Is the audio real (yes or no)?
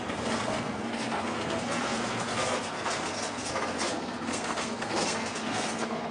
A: no